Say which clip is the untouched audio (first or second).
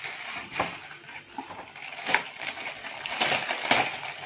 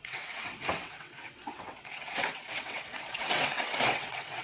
first